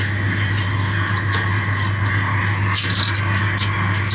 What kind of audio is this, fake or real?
real